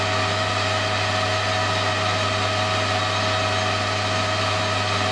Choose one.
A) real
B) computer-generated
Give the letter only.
A